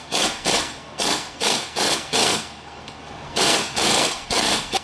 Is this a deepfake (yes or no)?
yes